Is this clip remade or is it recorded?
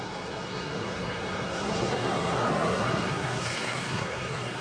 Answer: remade